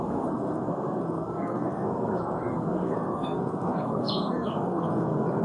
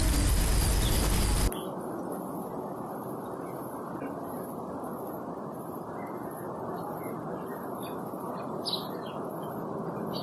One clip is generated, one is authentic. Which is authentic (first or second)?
second